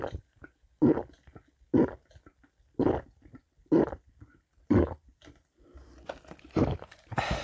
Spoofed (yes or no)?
no